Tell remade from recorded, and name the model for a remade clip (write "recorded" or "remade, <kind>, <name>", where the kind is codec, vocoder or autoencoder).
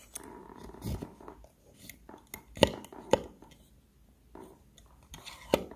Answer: recorded